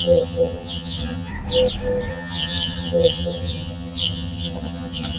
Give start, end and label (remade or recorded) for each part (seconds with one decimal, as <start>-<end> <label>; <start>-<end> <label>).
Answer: 0.0-1.3 remade; 1.3-2.1 recorded; 2.1-5.2 remade